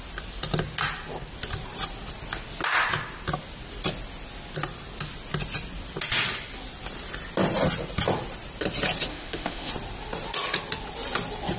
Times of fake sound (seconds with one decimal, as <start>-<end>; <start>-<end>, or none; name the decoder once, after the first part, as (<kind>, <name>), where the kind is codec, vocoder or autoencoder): 9.1-9.7 (autoencoder, DAC-VAE)